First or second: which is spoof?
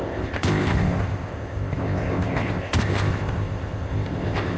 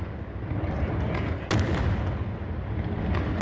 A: first